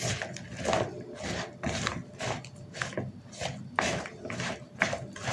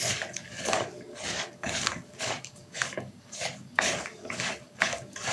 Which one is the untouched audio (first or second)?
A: first